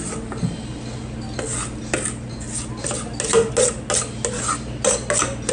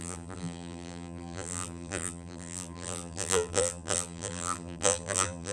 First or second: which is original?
first